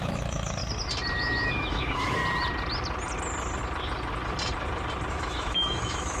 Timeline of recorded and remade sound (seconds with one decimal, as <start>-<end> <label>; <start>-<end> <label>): 0.0-0.6 remade; 0.6-1.1 recorded; 1.1-2.2 remade; 2.2-5.1 recorded; 5.1-6.2 remade